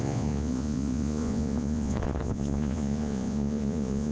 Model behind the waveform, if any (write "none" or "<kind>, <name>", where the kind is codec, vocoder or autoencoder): vocoder, Vocos